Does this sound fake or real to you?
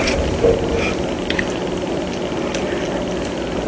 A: real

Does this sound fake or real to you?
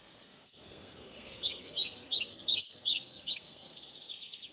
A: fake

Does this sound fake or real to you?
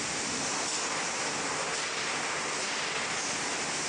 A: real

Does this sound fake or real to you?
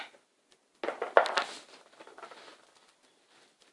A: real